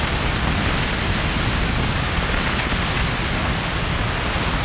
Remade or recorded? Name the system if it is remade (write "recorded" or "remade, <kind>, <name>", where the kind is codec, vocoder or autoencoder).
recorded